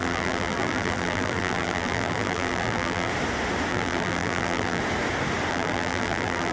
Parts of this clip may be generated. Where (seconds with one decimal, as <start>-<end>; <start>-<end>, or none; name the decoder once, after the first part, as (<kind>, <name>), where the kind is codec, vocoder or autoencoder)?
0.0-3.1 (vocoder, BigVGAN v2); 3.7-4.8; 5.5-6.5

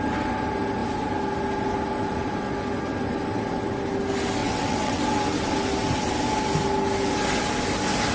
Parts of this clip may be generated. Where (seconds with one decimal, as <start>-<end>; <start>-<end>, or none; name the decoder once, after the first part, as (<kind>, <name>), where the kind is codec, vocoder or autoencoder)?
4.4-5.0 (vocoder, WaveNeXt)

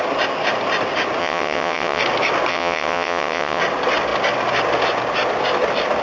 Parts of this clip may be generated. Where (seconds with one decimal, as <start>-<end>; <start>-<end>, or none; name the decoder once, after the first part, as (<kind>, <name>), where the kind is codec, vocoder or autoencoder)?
1.2-2.0 (vocoder, WaveNeXt); 2.5-3.6

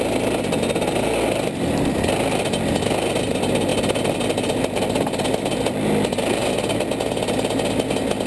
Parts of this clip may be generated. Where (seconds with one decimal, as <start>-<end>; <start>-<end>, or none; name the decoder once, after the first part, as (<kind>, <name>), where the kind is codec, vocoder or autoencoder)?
none